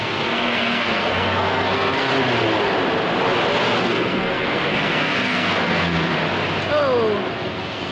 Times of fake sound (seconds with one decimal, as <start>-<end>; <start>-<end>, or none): 0.0-2.1; 3.8-6.1; 7.3-7.9